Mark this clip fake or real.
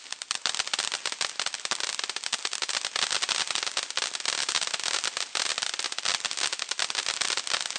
real